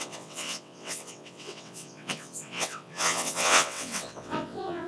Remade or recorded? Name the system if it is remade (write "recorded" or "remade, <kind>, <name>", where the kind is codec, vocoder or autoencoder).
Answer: remade, vocoder, WaveNeXt